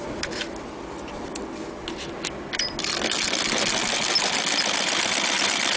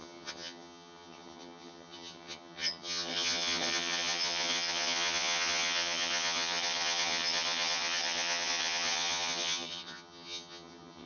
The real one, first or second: first